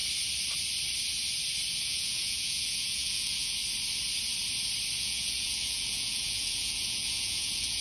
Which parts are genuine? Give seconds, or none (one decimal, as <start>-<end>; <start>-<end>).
0.0-1.8; 3.6-5.0